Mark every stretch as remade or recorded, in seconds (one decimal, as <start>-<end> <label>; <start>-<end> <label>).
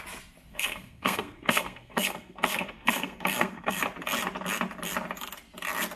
0.0-0.5 recorded; 0.5-3.8 remade; 3.8-6.0 recorded